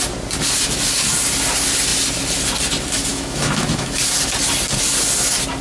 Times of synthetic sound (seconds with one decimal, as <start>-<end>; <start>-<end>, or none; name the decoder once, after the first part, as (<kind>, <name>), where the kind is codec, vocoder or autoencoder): 3.1-4.0 (autoencoder, DAC-VAE)